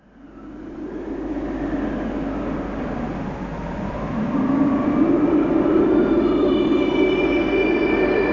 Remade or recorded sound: recorded